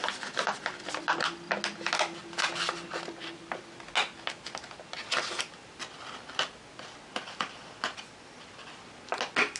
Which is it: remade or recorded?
recorded